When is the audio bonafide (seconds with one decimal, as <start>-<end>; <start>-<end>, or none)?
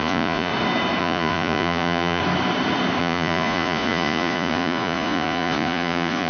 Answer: 0.5-1.0; 2.2-3.0